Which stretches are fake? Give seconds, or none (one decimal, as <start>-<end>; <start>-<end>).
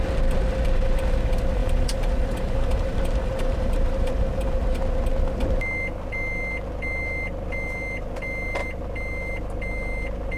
1.6-4.8